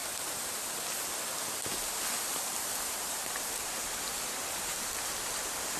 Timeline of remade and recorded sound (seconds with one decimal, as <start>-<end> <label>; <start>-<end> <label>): 0.0-0.6 remade; 0.6-1.7 recorded; 1.7-5.2 remade; 5.2-5.8 recorded